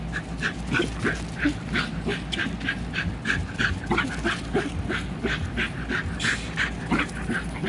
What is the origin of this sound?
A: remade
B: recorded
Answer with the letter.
B